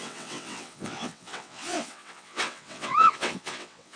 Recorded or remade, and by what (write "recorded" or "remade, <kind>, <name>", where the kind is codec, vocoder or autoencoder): remade, vocoder, WaveNeXt